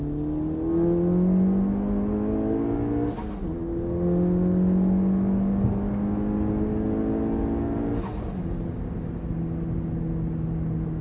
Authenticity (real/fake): real